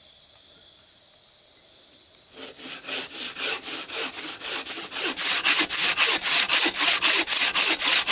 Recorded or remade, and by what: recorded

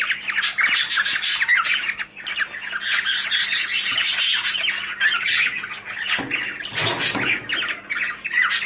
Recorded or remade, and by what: recorded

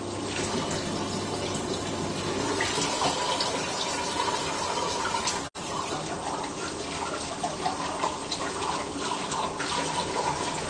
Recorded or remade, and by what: recorded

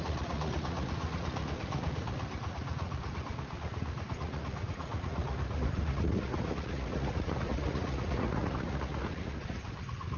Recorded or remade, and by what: remade, vocoder, Vocos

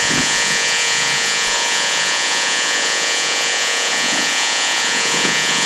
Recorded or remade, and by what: remade, vocoder, Vocos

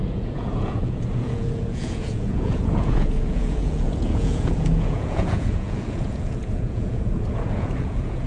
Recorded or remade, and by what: remade, vocoder, Vocos